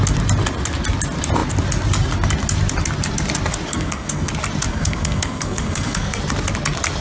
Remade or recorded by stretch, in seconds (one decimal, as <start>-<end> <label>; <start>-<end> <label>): 0.0-3.7 recorded; 3.7-4.3 remade; 4.3-4.7 recorded; 4.7-6.2 remade; 6.2-7.0 recorded